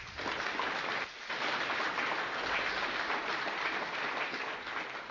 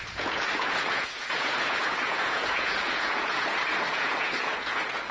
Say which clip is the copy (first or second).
second